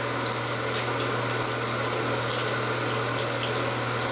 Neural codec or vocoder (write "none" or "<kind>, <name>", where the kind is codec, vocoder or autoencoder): none